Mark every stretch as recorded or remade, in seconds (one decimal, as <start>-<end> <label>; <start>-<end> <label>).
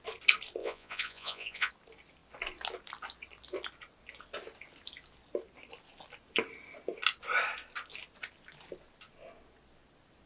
0.0-0.6 recorded; 0.6-1.7 remade; 1.7-10.3 recorded